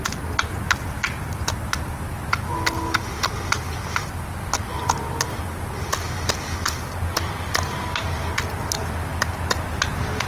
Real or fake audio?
real